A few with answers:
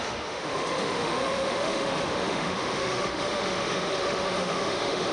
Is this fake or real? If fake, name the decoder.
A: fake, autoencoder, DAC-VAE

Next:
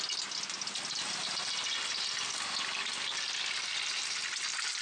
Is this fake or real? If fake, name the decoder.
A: real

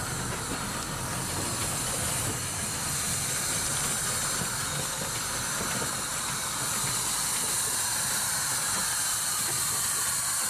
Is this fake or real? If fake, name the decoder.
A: real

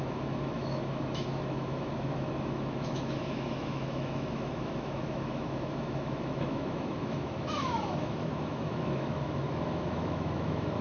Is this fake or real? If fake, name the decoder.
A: fake, autoencoder, DAC-VAE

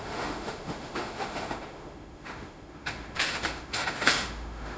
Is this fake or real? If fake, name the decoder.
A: fake, autoencoder, DAC-VAE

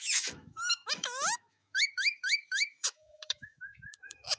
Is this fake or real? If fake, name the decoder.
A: fake, autoencoder, DAC-VAE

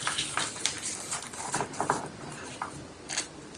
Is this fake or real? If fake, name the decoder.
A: real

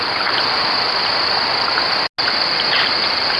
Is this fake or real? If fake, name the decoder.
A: real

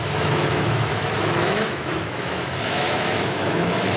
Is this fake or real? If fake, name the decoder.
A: fake, autoencoder, DAC-VAE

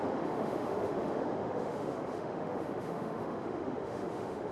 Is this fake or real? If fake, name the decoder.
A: fake, autoencoder, DAC-VAE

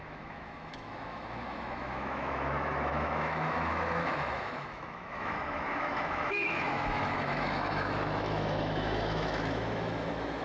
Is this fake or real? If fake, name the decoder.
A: fake, autoencoder, DAC-VAE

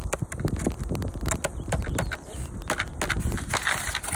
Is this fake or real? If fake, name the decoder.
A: real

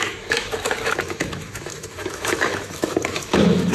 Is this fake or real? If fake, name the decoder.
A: fake, autoencoder, DAC-VAE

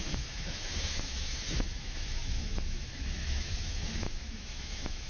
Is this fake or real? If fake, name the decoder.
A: fake, autoencoder, DAC-VAE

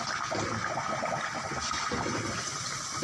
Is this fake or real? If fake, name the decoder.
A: real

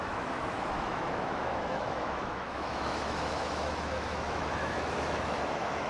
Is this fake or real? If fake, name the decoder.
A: fake, autoencoder, DAC-VAE